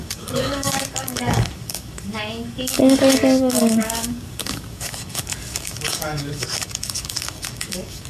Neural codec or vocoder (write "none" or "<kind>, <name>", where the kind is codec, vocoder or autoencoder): codec, DAC